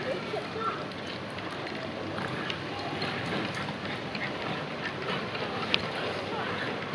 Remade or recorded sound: recorded